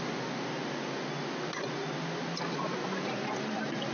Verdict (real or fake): real